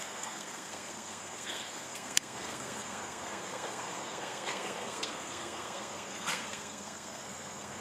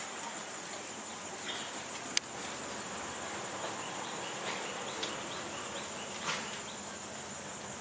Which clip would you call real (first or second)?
second